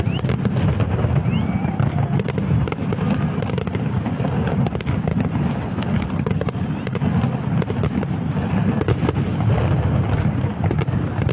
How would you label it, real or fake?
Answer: real